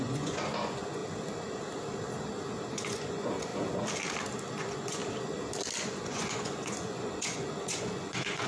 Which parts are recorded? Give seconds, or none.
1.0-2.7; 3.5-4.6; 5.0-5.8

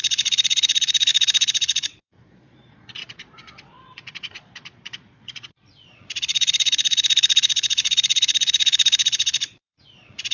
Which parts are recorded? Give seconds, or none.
none

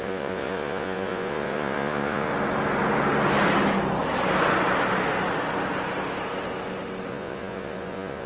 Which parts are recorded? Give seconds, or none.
2.3-7.1